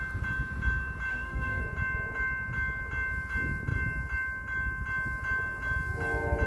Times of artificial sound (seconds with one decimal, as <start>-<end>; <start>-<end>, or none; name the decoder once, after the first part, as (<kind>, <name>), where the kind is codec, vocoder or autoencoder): 1.1-1.6 (autoencoder, DAC-VAE)